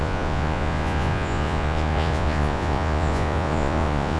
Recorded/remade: remade